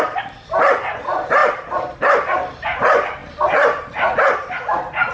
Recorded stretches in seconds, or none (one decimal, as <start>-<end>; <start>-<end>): 3.2-4.5